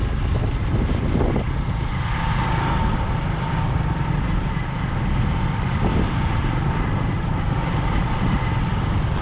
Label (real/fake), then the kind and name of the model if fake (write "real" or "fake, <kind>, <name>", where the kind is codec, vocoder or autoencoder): real